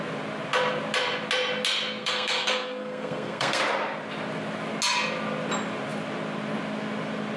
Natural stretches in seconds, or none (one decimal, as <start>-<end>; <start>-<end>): 0.0-2.0; 3.6-7.4